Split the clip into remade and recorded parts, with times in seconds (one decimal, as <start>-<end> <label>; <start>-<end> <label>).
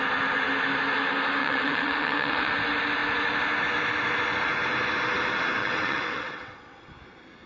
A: 0.0-1.4 recorded; 1.4-2.5 remade; 2.5-5.6 recorded; 5.6-6.9 remade; 6.9-7.5 recorded